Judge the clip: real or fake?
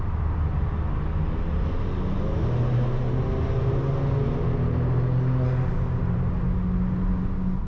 real